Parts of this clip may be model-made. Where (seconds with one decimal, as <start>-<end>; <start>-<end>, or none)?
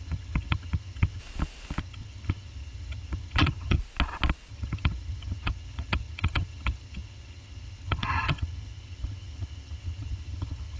0.0-1.2; 1.8-3.8; 4.5-10.8